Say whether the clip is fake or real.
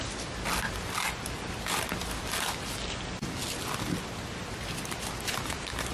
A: real